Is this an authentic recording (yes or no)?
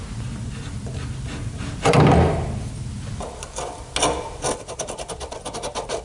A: yes